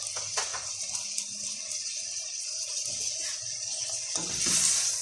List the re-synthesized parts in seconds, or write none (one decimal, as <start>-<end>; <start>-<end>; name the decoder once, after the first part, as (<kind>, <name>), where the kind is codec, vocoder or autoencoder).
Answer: none